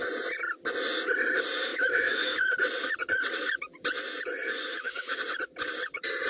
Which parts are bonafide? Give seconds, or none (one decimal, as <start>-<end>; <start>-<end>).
0.0-1.7; 2.5-4.7; 5.2-6.3

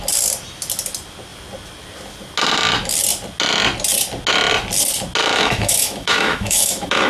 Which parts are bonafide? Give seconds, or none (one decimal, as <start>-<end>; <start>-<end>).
0.0-5.2